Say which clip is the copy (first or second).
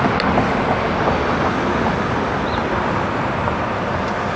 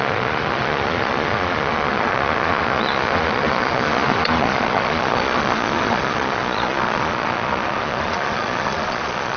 second